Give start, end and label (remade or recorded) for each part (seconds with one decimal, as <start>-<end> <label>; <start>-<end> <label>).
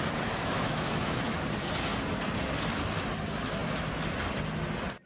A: 0.0-0.4 recorded; 0.4-1.4 remade; 1.4-5.1 recorded